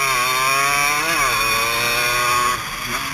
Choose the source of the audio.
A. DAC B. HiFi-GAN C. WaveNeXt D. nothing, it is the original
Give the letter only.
D